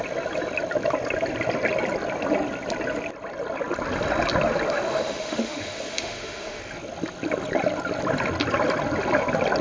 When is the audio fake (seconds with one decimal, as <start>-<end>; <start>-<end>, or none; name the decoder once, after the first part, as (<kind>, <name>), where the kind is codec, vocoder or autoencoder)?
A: 4.9-6.6 (autoencoder, DAC-VAE)